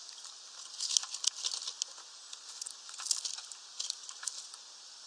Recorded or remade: recorded